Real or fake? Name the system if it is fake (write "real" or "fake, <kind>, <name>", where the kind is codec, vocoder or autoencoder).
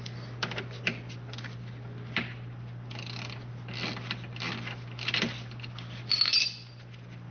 real